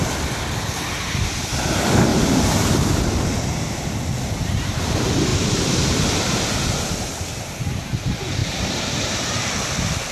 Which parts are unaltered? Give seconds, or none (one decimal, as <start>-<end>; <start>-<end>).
0.0-2.1; 3.0-8.4; 9.5-10.1